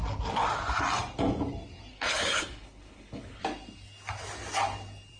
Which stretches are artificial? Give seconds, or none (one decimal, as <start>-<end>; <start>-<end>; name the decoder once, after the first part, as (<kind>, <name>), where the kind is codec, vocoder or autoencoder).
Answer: 1.9-3.4 (codec, HILCodec)